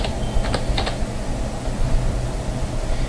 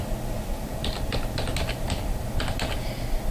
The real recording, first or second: first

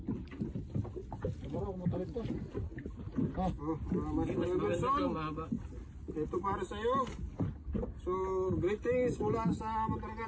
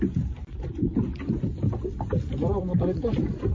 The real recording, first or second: first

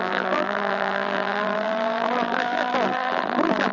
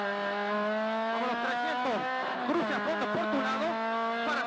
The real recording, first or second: second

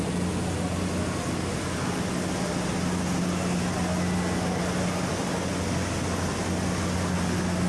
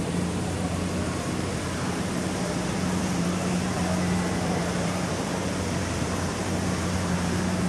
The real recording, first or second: first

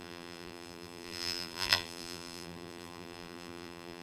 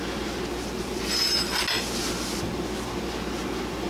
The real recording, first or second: second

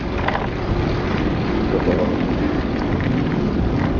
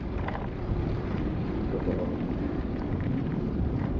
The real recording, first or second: first